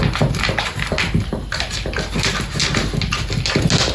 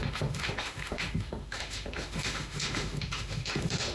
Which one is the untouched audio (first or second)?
first